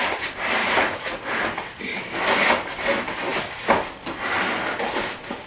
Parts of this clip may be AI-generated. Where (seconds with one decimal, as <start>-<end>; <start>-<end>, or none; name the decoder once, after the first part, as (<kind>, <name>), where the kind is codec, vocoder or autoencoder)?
0.6-1.2 (vocoder, Vocos)